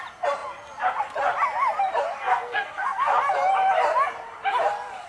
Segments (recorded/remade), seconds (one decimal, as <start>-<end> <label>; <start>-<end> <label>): 0.0-2.2 recorded; 2.2-3.1 remade; 3.1-5.1 recorded